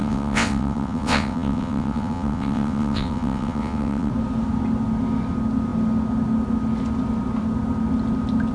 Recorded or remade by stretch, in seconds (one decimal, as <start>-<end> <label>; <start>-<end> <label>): 0.0-4.1 remade; 4.1-8.5 recorded